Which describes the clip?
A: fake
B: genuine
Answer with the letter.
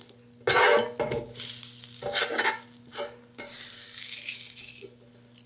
B